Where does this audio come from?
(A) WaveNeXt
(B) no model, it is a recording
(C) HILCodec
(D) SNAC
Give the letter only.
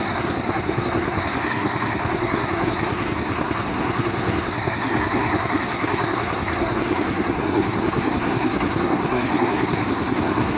D